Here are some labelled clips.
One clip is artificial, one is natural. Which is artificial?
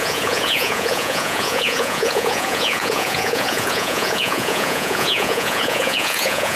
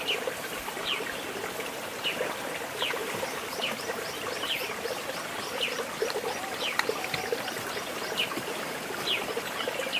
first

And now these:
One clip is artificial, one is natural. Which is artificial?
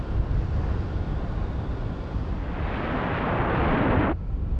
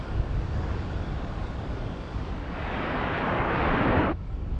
second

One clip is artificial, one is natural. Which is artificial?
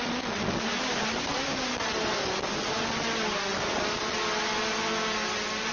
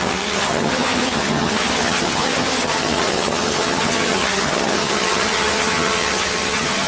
second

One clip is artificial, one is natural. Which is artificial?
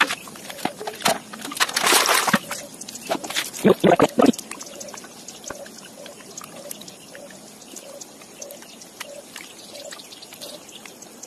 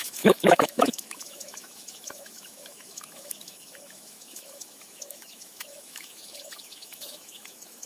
second